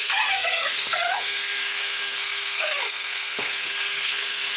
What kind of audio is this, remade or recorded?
remade